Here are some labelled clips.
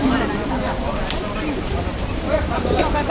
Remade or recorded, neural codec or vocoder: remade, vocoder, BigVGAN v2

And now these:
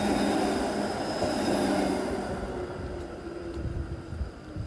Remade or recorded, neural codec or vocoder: recorded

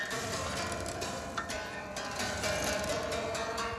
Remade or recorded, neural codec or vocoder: remade, vocoder, BigVGAN v2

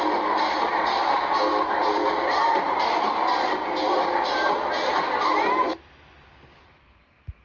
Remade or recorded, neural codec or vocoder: recorded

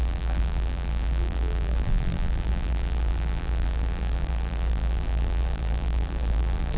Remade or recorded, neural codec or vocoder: remade, vocoder, BigVGAN v2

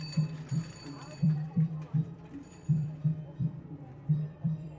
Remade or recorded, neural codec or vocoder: remade, vocoder, BigVGAN v2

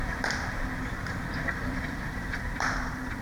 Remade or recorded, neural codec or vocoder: remade, vocoder, BigVGAN v2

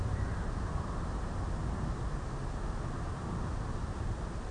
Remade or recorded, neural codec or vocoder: recorded